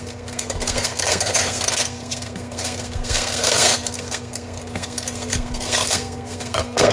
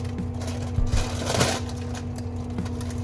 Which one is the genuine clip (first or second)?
second